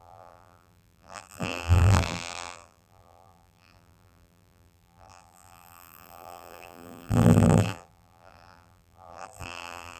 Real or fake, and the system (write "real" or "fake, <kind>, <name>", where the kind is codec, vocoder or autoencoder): fake, vocoder, BigVGAN v2